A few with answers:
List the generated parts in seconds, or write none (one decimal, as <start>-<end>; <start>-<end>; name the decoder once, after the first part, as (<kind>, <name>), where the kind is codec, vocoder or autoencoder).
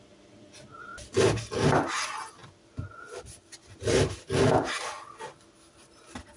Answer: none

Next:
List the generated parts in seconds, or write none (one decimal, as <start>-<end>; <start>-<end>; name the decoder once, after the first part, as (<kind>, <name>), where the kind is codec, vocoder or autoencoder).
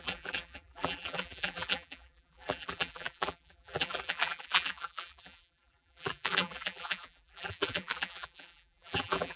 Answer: 0.0-9.4 (vocoder, BigVGAN v2)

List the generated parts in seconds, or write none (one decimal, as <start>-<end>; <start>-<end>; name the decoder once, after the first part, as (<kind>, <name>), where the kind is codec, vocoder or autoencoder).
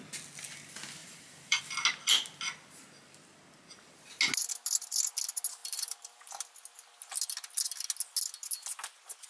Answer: 1.0-1.6 (vocoder, BigVGAN v2); 5.6-6.3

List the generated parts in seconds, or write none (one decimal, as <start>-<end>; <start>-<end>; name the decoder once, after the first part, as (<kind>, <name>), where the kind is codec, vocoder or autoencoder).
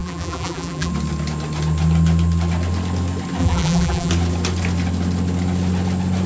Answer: 0.0-0.9 (vocoder, BigVGAN v2); 3.4-4.1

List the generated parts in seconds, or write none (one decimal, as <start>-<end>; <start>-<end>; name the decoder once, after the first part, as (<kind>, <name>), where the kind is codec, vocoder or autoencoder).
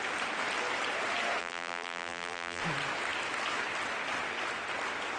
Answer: 1.4-2.6 (vocoder, BigVGAN v2)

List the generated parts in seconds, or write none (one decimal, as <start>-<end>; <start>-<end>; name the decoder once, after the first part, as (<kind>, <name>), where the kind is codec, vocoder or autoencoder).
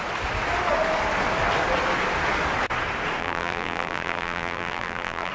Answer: 3.2-5.3 (vocoder, BigVGAN v2)